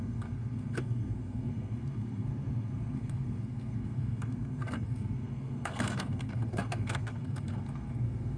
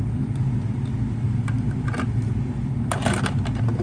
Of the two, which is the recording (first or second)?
second